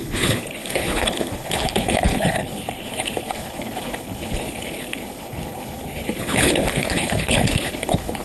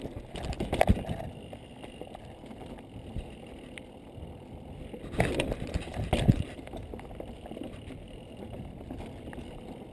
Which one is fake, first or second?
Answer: first